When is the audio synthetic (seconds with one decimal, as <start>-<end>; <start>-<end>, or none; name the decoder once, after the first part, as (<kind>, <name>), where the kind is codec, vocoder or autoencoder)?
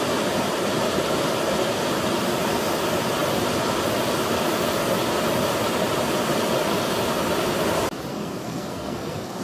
8.1-9.4 (codec, SNAC)